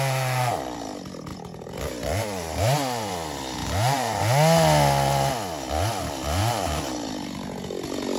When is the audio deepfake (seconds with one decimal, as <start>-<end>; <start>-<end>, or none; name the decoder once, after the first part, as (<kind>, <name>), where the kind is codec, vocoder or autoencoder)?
1.3-3.1 (vocoder, BigVGAN v2); 3.6-4.2; 6.4-7.1